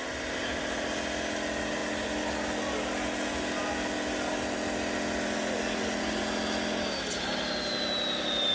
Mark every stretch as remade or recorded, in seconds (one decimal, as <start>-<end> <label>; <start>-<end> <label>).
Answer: 0.0-8.5 recorded

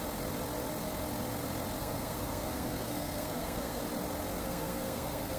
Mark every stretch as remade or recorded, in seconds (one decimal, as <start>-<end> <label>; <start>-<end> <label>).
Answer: 0.0-1.8 recorded; 1.8-3.8 remade; 3.8-4.4 recorded; 4.4-5.4 remade